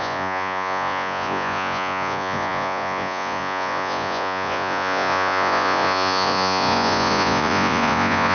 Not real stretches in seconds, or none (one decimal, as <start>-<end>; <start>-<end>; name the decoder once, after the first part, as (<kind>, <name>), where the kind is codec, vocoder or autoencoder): 0.0-8.3 (vocoder, Vocos)